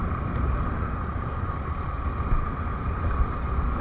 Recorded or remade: recorded